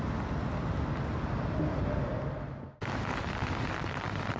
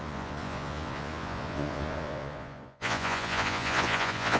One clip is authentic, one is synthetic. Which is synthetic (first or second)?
second